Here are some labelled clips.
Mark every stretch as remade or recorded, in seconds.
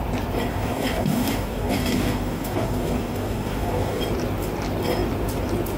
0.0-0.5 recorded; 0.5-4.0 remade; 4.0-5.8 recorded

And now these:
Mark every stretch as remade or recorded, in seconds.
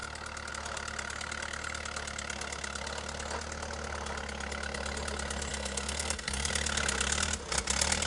0.0-5.5 recorded; 5.5-6.5 remade; 6.5-8.1 recorded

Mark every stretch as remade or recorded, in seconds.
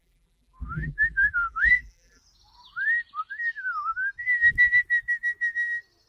0.0-2.2 remade; 2.2-6.1 recorded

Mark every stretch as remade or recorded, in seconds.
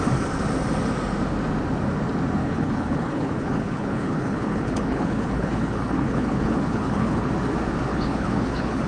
0.0-2.4 recorded; 2.4-7.3 remade; 7.3-7.9 recorded; 7.9-8.9 remade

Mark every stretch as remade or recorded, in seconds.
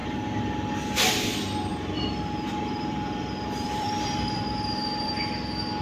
0.0-1.1 remade; 1.1-1.7 recorded; 1.7-5.1 remade; 5.1-5.8 recorded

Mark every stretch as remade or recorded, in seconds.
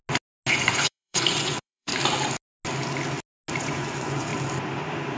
0.0-0.5 recorded; 0.5-1.9 remade; 1.9-3.6 recorded; 3.6-4.3 remade; 4.3-5.2 recorded